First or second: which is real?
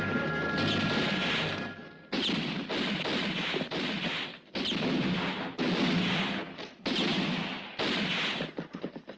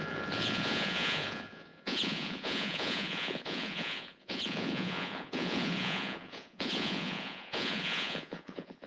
first